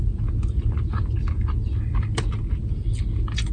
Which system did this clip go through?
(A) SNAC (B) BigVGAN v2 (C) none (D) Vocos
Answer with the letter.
C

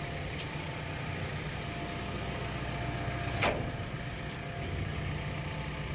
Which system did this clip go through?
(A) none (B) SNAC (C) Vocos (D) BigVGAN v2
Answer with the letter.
A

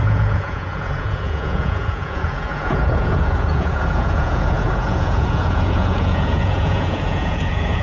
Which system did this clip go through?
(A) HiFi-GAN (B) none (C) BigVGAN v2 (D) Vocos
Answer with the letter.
D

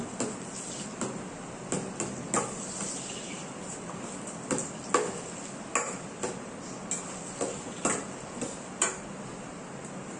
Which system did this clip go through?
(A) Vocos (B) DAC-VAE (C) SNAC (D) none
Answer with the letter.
D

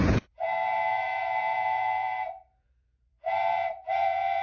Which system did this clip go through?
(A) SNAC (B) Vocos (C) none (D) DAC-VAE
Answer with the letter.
B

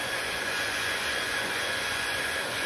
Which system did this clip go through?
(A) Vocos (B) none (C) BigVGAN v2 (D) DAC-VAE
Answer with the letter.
A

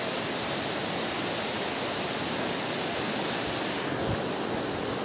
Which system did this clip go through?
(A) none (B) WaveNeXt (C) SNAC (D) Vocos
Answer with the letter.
A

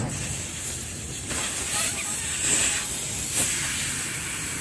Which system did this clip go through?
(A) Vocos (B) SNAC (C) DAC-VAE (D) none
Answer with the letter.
D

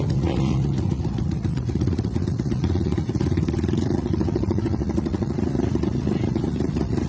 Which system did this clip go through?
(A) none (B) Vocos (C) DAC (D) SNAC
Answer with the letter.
B